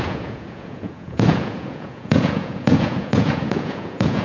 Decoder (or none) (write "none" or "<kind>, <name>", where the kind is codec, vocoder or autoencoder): vocoder, Vocos